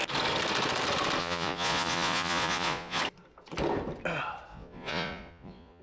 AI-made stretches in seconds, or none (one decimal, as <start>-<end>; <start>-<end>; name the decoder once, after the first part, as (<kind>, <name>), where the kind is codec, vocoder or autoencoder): 1.2-3.0 (vocoder, Vocos); 4.5-5.8